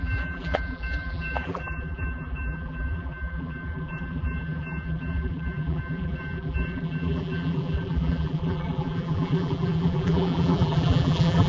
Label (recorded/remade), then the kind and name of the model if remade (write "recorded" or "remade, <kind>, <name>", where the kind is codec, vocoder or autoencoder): remade, vocoder, BigVGAN v2